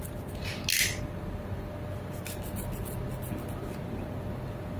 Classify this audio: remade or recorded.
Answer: recorded